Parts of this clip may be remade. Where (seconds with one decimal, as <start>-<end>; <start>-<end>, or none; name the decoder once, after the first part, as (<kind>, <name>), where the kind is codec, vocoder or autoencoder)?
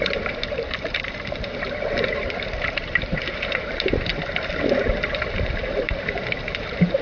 0.0-4.1 (vocoder, BigVGAN v2); 5.2-7.0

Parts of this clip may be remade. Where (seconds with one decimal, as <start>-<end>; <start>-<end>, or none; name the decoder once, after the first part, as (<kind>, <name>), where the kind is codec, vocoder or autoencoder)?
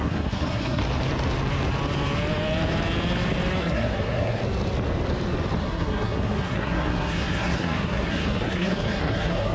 0.0-0.8 (codec, SNAC); 3.6-4.4; 5.6-9.5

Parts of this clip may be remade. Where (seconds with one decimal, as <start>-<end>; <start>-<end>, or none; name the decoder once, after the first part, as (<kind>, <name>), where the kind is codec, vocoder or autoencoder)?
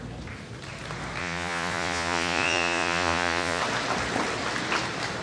1.2-3.6 (vocoder, Vocos)